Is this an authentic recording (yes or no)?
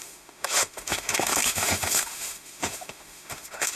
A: no